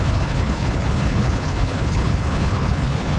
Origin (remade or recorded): remade